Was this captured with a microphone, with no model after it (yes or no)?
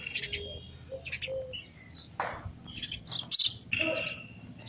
yes